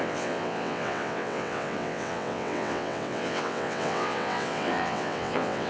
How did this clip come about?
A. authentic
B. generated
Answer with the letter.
B